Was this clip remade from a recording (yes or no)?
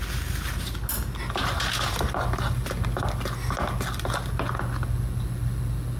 no